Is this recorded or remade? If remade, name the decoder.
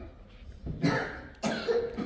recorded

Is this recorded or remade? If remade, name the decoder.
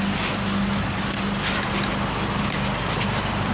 recorded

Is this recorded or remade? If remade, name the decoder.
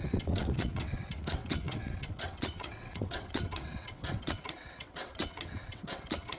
remade, vocoder, WaveNeXt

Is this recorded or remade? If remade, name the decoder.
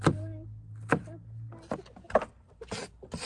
recorded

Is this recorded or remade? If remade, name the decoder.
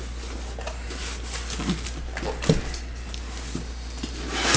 recorded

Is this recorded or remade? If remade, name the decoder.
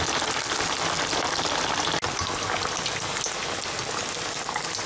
recorded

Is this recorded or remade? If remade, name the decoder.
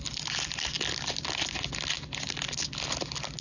recorded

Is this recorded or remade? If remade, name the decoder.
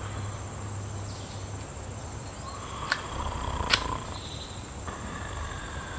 recorded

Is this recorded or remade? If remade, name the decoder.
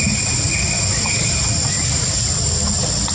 recorded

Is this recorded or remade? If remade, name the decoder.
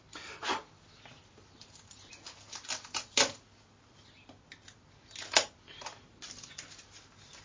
recorded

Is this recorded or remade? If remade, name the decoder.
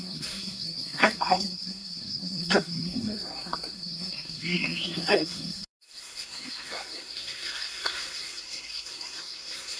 remade, codec, SNAC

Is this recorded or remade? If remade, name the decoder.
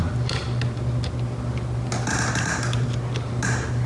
recorded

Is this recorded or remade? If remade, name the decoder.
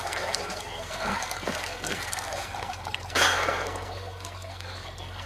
remade, codec, SNAC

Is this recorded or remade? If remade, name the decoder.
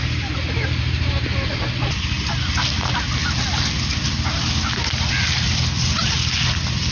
recorded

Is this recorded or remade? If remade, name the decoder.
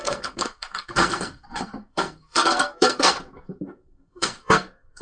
remade, codec, SNAC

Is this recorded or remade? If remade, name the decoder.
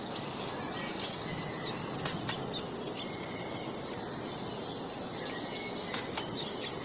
recorded